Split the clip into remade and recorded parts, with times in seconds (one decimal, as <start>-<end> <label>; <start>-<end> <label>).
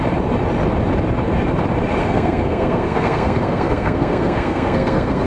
0.0-2.0 recorded; 2.0-5.3 remade